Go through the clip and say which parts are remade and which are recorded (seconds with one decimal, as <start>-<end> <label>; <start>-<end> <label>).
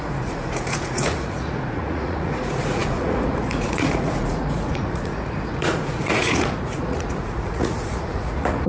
0.0-8.7 remade